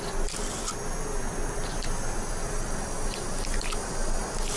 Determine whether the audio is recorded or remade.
recorded